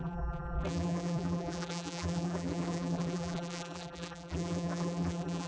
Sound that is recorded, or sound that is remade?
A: remade